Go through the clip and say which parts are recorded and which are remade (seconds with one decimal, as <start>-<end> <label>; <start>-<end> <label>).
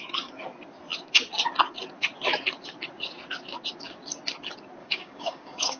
0.0-4.8 recorded; 4.8-5.8 remade